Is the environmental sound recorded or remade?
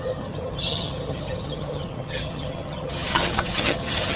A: remade